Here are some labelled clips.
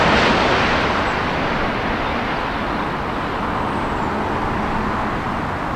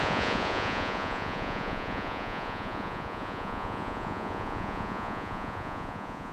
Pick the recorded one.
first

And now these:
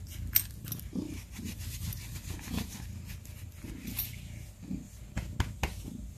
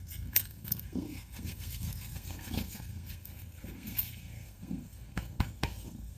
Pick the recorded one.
first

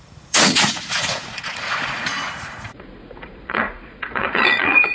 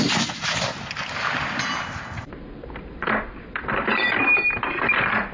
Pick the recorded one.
second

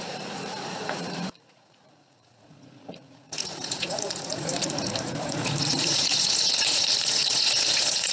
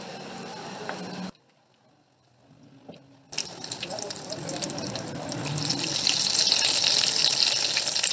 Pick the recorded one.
second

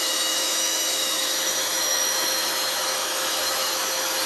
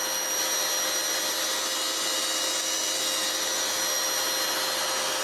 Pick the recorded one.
second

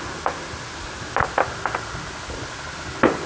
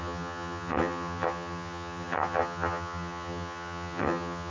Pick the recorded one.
first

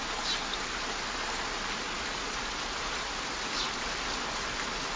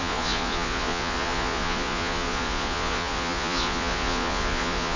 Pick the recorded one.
first